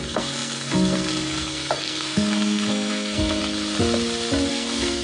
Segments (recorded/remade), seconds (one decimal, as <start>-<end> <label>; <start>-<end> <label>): 0.0-3.4 remade; 3.4-4.5 recorded; 4.5-5.0 remade